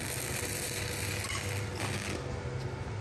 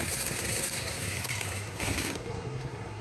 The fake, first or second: second